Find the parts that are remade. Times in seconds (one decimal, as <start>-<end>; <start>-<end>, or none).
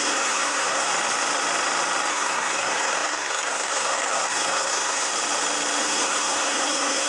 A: 0.0-0.9; 2.1-5.1; 5.8-7.1